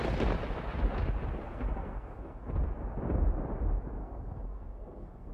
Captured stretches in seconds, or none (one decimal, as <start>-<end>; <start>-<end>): 0.0-1.5; 2.4-4.0